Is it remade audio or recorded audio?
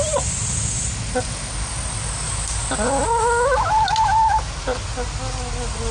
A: recorded